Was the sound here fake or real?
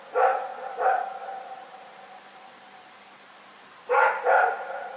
real